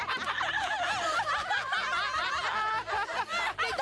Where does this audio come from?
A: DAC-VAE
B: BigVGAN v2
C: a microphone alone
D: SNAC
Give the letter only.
C